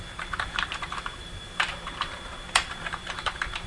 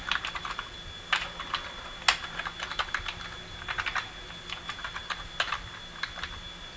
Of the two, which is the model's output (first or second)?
first